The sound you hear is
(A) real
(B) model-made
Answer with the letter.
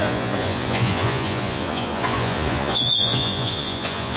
B